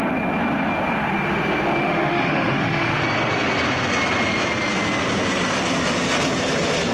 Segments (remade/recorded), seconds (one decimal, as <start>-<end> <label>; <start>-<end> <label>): 0.0-1.8 recorded; 1.8-3.0 remade; 3.0-6.9 recorded